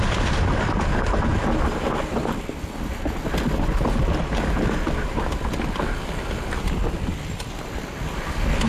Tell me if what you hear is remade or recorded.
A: recorded